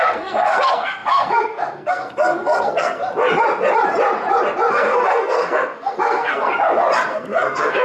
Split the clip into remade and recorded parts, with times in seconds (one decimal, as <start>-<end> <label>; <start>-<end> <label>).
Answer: 0.0-3.0 remade; 3.0-4.7 recorded; 4.7-6.5 remade; 6.5-7.1 recorded; 7.1-7.8 remade